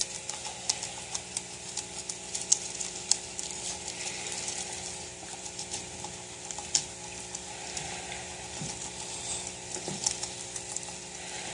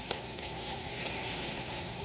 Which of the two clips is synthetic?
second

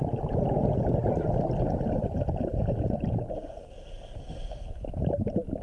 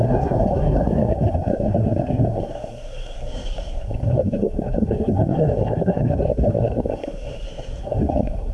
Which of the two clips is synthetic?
second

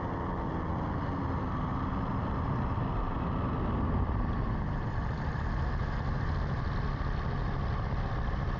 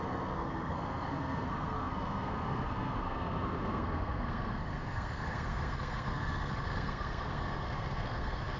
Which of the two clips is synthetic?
second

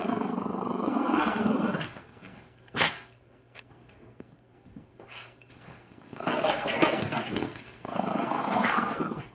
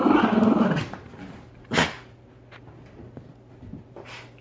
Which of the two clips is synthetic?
first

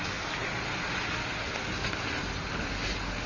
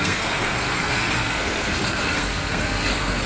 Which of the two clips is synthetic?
second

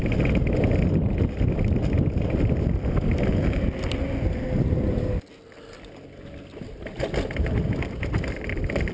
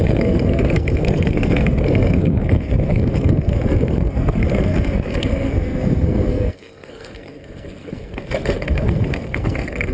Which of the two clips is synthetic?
second